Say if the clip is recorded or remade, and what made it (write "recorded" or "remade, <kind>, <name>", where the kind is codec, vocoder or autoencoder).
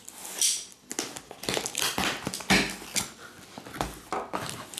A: recorded